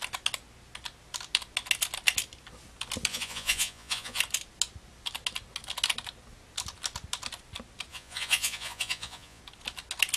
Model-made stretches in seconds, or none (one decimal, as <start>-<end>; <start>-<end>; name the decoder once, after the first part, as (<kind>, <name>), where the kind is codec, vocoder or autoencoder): 3.1-4.2 (vocoder, Vocos); 7.9-9.4